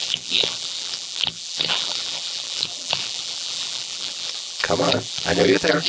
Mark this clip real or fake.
fake